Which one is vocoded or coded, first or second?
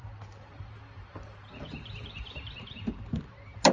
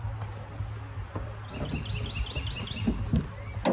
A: first